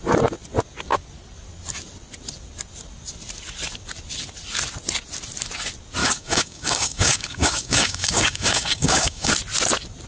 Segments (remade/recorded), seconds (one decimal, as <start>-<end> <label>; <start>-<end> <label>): 0.0-6.0 recorded; 6.0-9.3 remade; 9.3-10.1 recorded